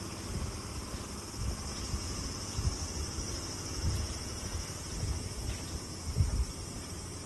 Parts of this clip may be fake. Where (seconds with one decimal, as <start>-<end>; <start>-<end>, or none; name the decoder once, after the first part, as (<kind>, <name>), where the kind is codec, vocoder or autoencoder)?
1.7-6.1 (vocoder, Vocos)